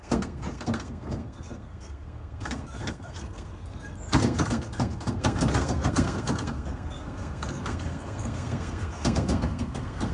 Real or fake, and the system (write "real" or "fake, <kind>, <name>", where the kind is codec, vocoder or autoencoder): fake, codec, SNAC